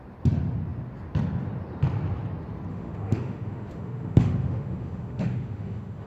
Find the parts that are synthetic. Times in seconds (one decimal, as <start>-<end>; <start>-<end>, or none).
2.7-6.1

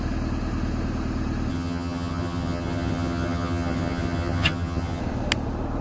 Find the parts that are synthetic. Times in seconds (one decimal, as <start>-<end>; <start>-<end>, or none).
1.5-5.0

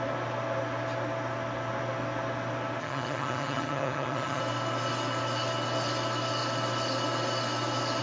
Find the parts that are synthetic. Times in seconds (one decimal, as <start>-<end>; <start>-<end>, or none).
2.8-4.4